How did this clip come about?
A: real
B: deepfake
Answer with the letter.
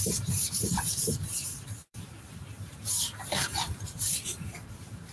B